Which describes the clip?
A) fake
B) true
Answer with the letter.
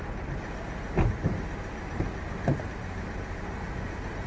B